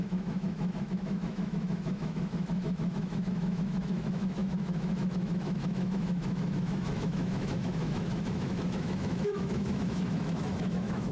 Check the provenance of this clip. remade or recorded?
remade